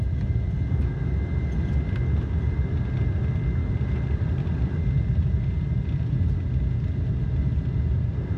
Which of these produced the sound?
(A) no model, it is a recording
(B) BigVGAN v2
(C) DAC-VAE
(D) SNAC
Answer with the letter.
A